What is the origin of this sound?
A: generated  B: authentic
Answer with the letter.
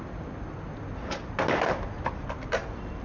B